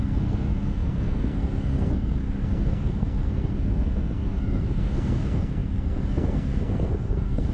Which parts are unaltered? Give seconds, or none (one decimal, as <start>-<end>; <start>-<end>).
none